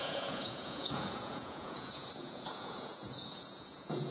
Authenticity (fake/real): fake